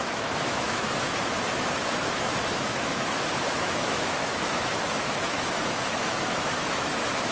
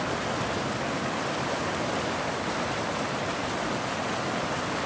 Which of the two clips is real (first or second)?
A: second